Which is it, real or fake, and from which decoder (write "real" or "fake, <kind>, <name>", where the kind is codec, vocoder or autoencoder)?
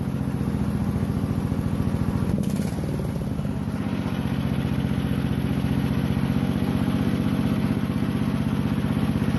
real